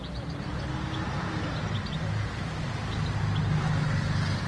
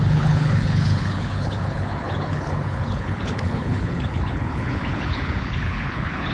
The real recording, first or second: first